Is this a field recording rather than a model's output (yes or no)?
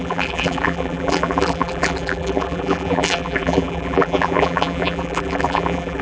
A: no